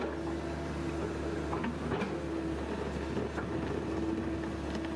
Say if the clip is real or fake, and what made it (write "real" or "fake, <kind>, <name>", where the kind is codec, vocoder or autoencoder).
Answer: real